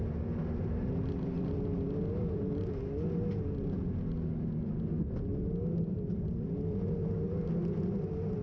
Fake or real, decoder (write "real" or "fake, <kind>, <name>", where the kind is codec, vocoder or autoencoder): real